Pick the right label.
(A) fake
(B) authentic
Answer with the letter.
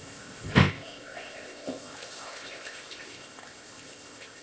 A